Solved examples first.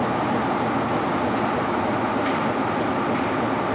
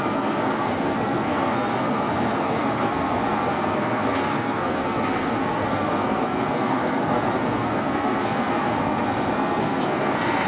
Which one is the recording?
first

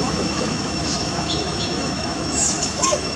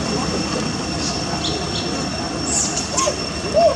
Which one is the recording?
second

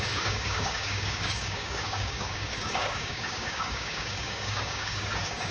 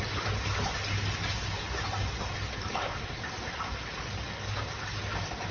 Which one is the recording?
second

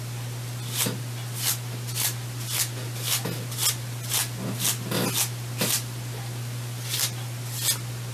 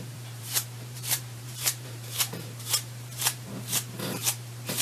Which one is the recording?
first